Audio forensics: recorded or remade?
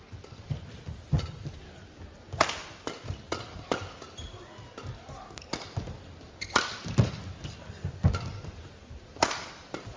recorded